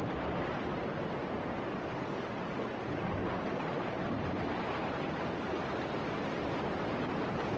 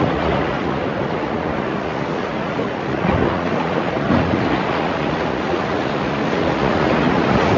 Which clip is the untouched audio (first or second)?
first